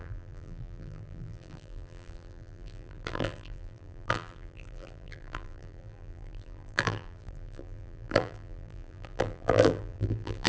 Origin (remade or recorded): remade